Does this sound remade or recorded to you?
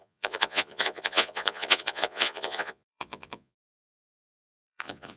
remade